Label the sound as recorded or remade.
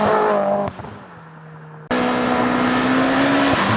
recorded